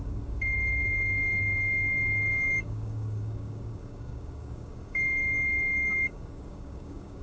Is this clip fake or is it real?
fake